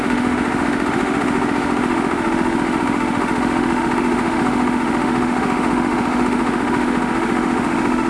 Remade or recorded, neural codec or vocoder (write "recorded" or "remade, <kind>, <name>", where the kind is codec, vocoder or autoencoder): remade, autoencoder, DAC-VAE